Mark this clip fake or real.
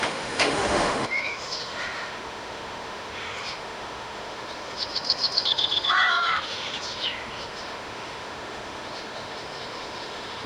fake